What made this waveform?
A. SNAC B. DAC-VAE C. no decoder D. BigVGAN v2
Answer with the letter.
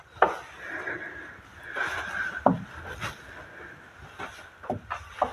C